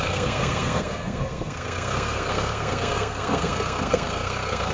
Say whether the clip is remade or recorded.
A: remade